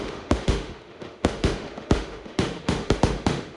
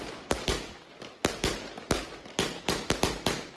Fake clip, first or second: first